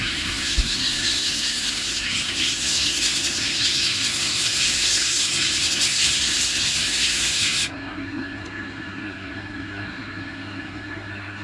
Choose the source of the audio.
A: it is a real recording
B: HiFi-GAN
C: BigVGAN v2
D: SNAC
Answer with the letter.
D